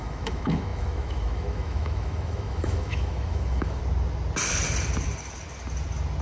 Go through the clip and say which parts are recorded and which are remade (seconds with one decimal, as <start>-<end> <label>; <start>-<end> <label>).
0.0-3.8 remade; 3.8-6.2 recorded